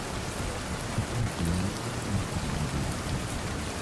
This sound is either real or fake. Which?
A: fake